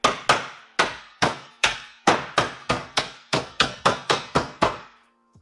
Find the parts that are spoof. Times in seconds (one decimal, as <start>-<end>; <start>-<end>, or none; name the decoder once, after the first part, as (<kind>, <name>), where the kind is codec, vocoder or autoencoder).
1.0-2.1 (codec, SNAC); 2.6-5.4

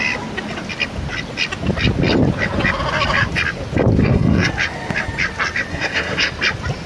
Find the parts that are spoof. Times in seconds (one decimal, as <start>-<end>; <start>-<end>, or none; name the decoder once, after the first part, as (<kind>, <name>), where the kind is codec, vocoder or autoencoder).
4.0-4.5 (codec, SNAC); 5.7-6.3